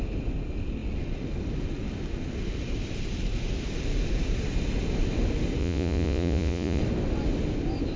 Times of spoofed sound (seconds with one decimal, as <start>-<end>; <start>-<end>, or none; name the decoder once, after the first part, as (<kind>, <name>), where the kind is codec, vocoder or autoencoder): 5.6-6.8 (vocoder, Vocos)

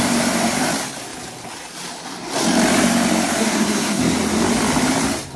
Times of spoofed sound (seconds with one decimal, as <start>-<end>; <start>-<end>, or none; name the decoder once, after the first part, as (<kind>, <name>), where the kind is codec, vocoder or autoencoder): 3.4-4.0 (codec, SNAC)